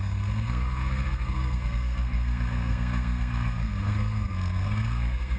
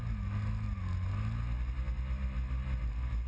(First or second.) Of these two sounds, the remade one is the first